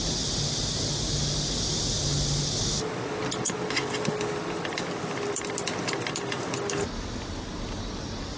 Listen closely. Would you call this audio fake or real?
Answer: real